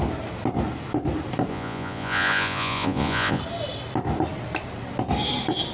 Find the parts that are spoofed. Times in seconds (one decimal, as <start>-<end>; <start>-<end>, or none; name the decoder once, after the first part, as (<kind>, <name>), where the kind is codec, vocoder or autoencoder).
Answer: 1.5-3.4 (vocoder, Vocos)